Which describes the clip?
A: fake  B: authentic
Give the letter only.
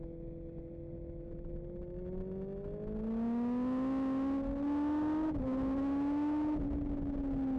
B